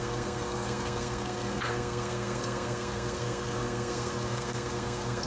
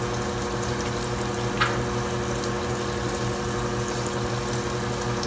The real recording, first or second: second